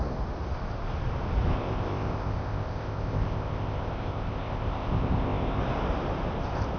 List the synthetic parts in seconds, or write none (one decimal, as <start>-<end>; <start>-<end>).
1.5-5.6